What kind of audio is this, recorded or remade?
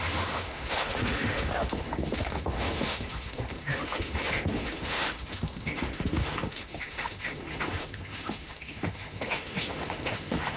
remade